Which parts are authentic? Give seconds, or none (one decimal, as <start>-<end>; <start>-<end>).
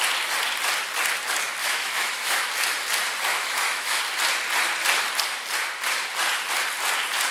0.0-1.6; 2.5-3.3; 4.0-7.3